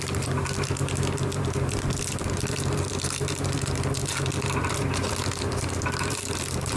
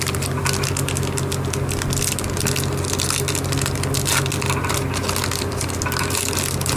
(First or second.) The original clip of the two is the second